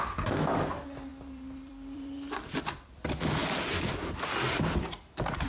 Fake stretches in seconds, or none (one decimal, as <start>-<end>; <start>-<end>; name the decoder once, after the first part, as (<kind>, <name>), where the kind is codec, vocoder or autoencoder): 1.1-2.6 (vocoder, BigVGAN v2); 3.4-3.9